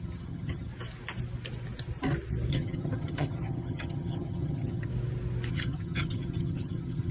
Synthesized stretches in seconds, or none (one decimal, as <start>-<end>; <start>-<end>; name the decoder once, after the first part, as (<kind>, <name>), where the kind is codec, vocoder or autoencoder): 0.0-0.7 (vocoder, HiFi-GAN); 2.5-4.9; 5.5-7.1

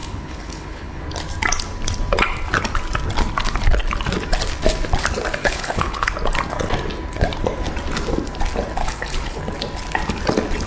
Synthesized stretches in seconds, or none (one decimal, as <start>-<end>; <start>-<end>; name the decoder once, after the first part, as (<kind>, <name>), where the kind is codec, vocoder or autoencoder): 0.0-1.0 (codec, HILCodec); 5.4-6.1; 8.8-9.4

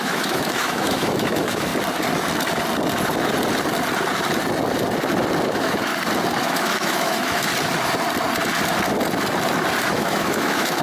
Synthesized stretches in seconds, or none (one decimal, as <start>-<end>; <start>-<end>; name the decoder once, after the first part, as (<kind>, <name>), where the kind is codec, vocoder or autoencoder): 0.0-1.7 (autoencoder, DAC-VAE); 5.5-5.9; 6.4-7.5; 9.8-10.8

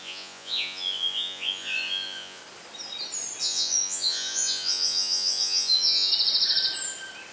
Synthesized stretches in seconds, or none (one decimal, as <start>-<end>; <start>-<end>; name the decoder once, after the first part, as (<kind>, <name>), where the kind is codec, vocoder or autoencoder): 0.0-2.4 (vocoder, Vocos); 3.4-6.1

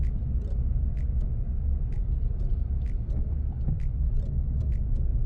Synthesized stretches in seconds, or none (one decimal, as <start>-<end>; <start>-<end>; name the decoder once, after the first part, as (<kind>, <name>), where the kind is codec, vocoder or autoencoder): none

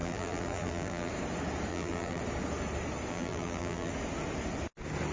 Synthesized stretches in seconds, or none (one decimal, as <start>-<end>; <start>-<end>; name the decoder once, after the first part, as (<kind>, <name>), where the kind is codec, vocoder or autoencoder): 0.0-1.1 (vocoder, BigVGAN v2); 1.7-2.2; 3.1-3.9

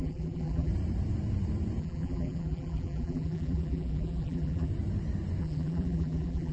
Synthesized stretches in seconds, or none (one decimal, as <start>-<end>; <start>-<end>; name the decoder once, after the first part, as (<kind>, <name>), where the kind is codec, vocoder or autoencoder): 0.0-0.7 (vocoder, BigVGAN v2); 1.8-4.7; 5.4-6.5